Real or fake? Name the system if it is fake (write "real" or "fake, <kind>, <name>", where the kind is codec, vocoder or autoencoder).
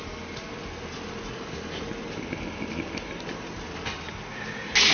real